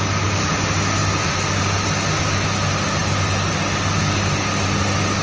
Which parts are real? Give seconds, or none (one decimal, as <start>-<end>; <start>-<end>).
0.0-5.2